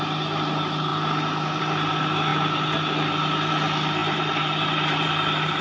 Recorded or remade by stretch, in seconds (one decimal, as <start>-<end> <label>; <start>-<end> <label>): 0.0-4.0 recorded; 4.0-5.6 remade